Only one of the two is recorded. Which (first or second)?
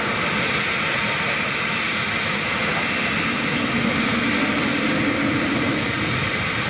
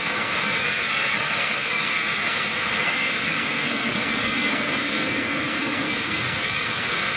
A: first